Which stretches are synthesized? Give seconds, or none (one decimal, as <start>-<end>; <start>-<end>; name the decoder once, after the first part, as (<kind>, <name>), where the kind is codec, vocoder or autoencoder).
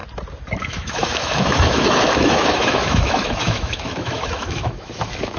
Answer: 0.6-5.4 (autoencoder, DAC-VAE)